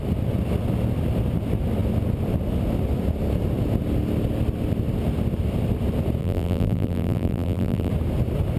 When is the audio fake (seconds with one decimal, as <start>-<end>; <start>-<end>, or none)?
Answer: 6.2-7.9